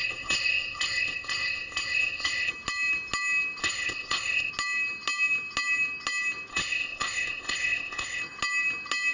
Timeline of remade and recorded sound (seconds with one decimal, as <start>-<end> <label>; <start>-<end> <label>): 0.0-2.5 remade; 2.5-3.6 recorded; 3.6-4.5 remade; 4.5-6.5 recorded; 6.5-8.2 remade; 8.2-9.1 recorded